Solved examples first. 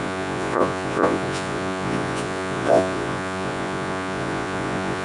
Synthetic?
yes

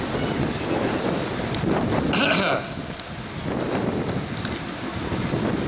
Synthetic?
no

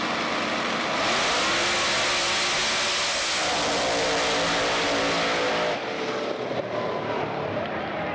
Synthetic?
no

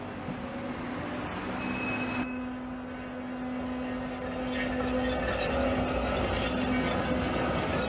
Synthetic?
no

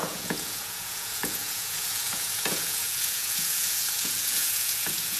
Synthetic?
yes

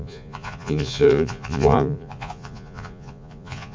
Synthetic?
yes